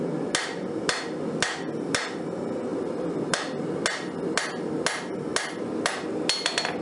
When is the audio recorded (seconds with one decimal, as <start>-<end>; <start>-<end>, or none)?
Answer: 0.0-6.8